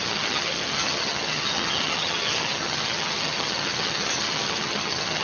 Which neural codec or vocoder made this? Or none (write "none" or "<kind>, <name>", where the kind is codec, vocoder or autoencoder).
vocoder, HiFi-GAN